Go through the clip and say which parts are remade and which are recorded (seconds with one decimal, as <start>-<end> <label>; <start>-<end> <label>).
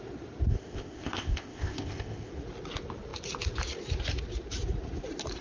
0.0-0.5 recorded; 0.5-2.3 remade; 2.3-5.4 recorded